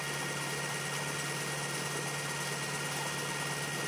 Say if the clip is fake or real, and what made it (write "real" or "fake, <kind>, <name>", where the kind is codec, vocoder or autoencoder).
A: real